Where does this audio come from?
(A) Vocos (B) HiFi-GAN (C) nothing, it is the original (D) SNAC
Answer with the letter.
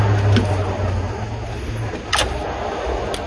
C